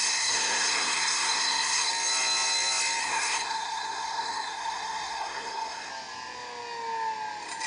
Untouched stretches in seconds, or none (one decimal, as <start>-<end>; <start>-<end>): 1.9-3.0; 5.9-7.7